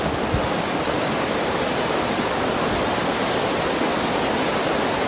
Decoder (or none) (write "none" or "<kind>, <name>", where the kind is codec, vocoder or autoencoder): none